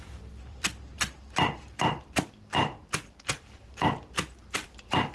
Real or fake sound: fake